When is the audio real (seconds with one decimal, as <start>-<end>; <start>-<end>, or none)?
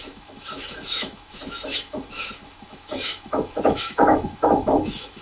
none